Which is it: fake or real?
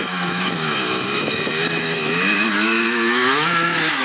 fake